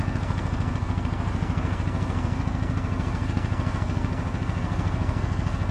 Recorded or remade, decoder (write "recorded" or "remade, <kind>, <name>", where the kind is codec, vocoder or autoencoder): remade, codec, SNAC